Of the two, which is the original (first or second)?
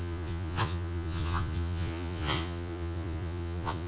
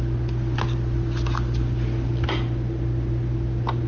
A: second